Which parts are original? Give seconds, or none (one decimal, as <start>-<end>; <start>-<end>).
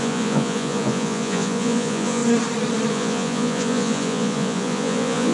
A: 2.2-2.9